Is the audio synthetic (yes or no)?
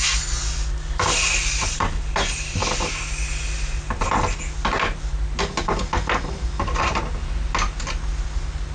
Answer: no